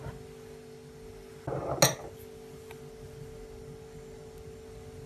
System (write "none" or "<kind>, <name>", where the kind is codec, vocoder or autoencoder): none